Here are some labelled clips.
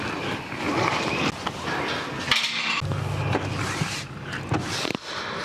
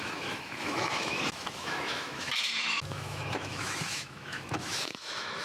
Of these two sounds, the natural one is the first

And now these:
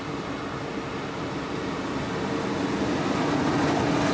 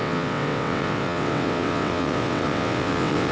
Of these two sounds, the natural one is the first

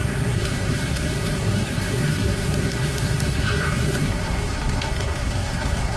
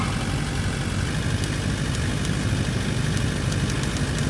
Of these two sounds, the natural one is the second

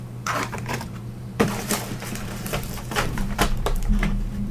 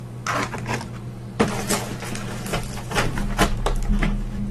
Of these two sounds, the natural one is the second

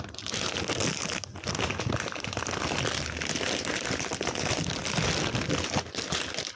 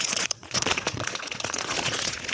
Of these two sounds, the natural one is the first